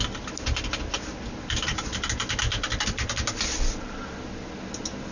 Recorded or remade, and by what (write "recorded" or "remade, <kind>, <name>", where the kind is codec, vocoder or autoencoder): recorded